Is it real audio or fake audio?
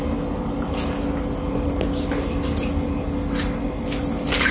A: real